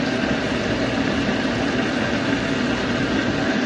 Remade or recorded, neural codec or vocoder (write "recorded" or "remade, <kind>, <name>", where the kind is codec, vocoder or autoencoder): recorded